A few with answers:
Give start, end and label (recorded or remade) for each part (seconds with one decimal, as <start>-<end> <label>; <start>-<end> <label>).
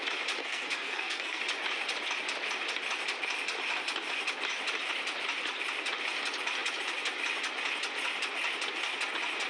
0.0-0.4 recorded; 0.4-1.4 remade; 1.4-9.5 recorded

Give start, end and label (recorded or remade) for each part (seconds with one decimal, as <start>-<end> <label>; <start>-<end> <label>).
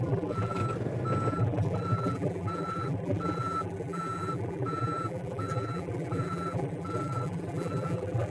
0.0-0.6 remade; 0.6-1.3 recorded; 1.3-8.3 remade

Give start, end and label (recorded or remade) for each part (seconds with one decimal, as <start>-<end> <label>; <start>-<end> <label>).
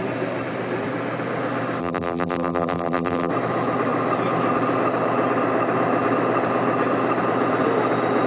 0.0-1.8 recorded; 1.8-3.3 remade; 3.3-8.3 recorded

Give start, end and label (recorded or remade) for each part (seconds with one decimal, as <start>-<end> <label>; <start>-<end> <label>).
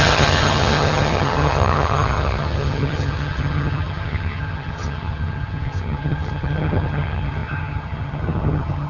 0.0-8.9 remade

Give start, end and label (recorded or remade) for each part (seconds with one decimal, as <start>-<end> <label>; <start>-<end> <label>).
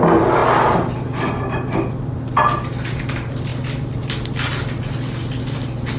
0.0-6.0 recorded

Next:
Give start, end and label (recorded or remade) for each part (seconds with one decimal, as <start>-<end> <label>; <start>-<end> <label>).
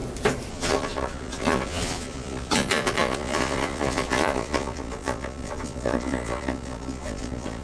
0.0-0.5 recorded; 0.5-7.6 remade